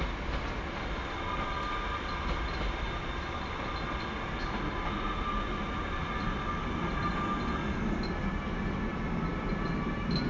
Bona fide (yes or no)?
yes